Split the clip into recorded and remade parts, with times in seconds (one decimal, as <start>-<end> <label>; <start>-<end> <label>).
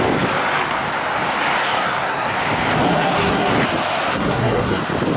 0.0-1.6 recorded; 1.6-2.4 remade; 2.4-2.9 recorded; 2.9-3.5 remade; 3.5-4.1 recorded; 4.1-4.8 remade; 4.8-5.2 recorded